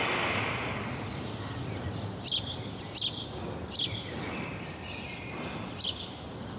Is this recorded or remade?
recorded